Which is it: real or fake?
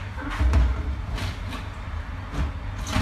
real